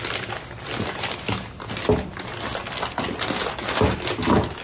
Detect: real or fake real